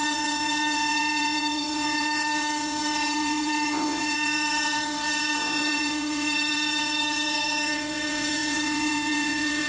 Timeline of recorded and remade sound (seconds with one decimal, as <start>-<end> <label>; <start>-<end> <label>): 0.0-9.7 remade